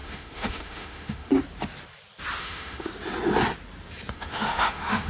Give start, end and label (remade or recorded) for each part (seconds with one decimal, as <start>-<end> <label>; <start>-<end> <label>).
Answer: 0.0-1.3 remade; 1.3-2.4 recorded; 2.4-2.9 remade; 2.9-4.1 recorded; 4.1-5.1 remade